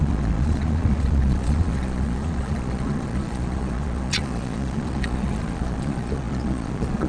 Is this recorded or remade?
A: remade